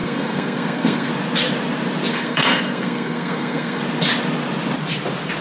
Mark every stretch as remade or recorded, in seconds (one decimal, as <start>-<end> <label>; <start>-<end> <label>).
0.0-1.1 remade; 1.1-2.1 recorded; 2.1-3.8 remade; 3.8-5.4 recorded